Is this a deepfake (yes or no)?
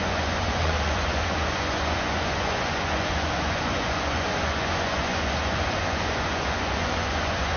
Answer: yes